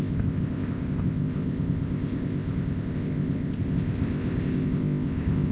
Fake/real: fake